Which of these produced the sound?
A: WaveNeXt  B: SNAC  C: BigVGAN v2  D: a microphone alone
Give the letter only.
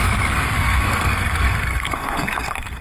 B